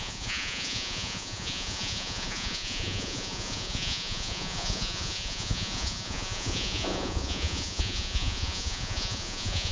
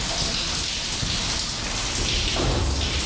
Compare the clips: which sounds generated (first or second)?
first